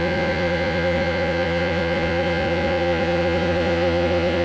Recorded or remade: remade